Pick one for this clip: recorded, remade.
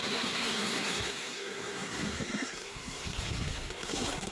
remade